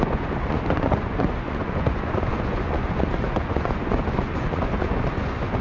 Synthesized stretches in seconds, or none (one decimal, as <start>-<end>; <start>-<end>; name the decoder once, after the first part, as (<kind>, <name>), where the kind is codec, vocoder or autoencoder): 0.0-5.6 (vocoder, Vocos)